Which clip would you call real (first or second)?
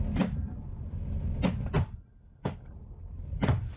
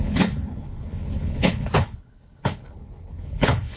first